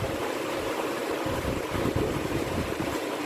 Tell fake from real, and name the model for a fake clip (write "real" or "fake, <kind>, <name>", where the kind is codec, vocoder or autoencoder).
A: fake, vocoder, BigVGAN v2